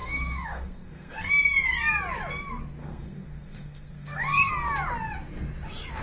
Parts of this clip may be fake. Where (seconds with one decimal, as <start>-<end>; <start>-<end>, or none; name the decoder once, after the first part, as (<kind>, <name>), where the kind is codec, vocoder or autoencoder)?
0.0-1.3 (codec, SNAC); 2.8-4.5